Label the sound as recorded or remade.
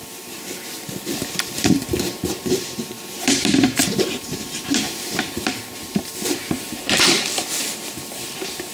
remade